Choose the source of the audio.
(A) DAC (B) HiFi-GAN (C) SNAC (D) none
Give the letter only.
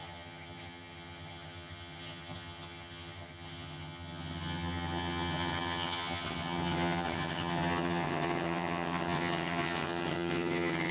B